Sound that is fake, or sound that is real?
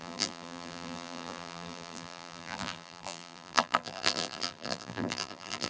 fake